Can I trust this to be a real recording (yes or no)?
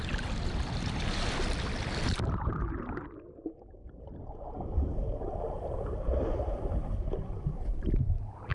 yes